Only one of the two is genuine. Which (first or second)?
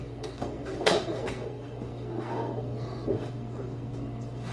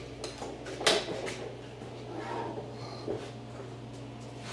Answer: second